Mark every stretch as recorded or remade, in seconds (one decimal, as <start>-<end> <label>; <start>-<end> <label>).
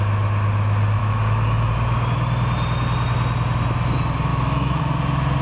0.0-1.0 recorded; 1.0-1.7 remade; 1.7-4.3 recorded; 4.3-4.8 remade; 4.8-5.4 recorded